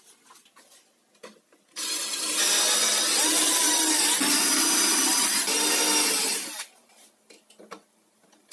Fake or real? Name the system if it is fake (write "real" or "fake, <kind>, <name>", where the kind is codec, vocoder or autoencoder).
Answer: real